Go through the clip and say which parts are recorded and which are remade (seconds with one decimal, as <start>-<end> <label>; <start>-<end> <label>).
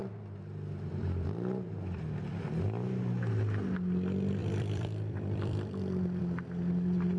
0.0-4.4 recorded; 4.4-6.2 remade; 6.2-7.2 recorded